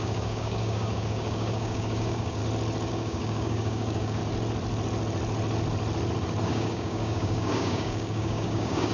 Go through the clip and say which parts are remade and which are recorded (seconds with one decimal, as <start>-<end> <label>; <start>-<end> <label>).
0.0-2.4 remade; 2.4-2.9 recorded; 2.9-4.2 remade; 4.2-6.5 recorded; 6.5-8.9 remade